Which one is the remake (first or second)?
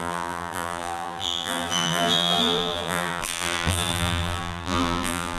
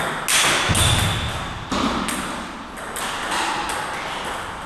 first